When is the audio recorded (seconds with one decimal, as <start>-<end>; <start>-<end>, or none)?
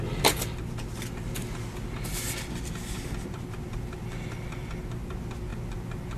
0.0-6.2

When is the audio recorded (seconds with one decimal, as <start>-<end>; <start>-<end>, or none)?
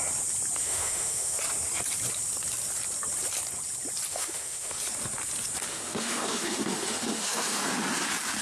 0.0-0.6; 1.4-4.1; 4.8-5.7; 7.6-8.4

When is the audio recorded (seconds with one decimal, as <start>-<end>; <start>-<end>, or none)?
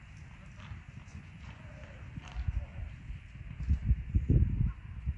0.0-1.1; 1.7-5.2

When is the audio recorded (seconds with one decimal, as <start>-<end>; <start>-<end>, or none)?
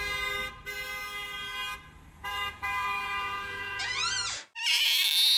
0.0-2.2; 4.0-5.4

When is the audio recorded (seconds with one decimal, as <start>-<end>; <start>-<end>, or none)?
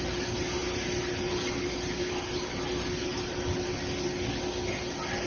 0.0-5.3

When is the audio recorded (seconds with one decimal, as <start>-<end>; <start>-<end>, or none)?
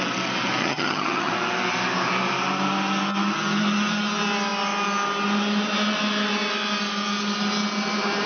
0.0-0.6; 1.3-8.3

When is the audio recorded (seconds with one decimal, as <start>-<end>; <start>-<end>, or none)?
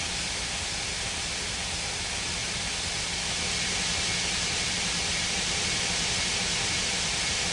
0.0-7.5